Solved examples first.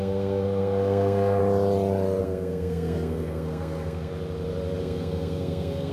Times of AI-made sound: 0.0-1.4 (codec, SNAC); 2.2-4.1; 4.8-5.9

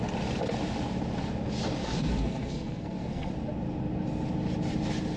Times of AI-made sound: 1.8-3.3 (codec, SNAC)

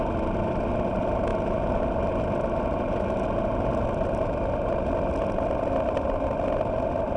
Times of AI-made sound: none

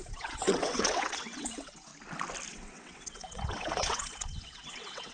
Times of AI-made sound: 0.0-1.9 (vocoder, WaveNeXt); 2.5-5.1

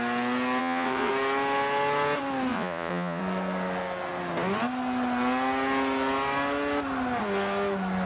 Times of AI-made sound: 0.6-1.1 (vocoder, Vocos); 2.5-3.2

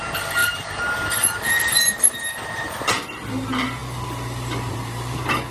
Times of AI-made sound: 0.4-2.9 (vocoder, BigVGAN v2)